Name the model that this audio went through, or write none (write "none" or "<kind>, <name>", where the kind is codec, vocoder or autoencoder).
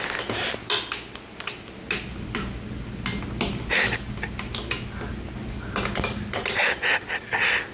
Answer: none